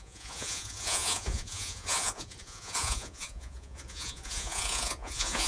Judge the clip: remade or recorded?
remade